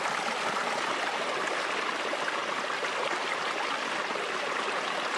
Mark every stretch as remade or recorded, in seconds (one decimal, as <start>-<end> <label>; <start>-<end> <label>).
0.0-5.2 recorded